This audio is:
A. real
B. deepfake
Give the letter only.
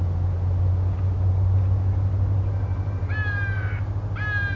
A